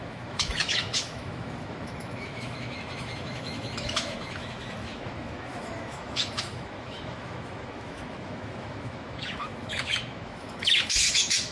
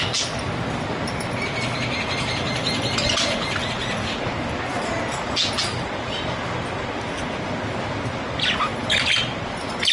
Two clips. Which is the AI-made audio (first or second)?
first